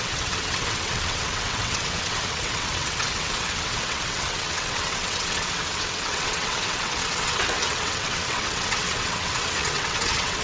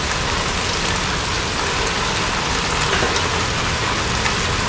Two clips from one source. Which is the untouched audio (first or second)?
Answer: second